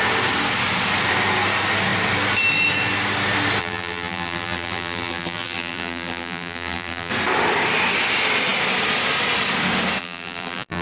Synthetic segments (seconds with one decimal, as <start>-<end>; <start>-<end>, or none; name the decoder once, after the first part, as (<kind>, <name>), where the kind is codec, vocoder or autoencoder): 3.6-7.1 (vocoder, BigVGAN v2); 10.0-10.8